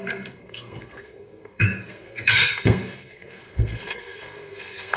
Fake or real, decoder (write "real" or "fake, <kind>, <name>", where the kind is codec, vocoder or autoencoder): fake, codec, SNAC